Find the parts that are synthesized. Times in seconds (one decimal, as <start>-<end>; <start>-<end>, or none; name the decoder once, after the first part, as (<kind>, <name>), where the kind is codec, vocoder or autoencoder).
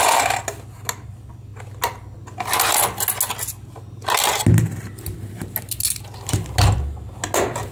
none